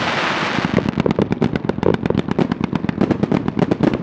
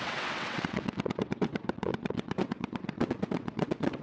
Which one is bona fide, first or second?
first